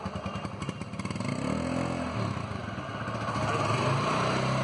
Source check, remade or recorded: recorded